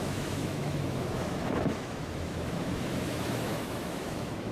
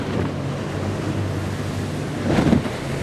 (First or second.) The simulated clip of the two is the first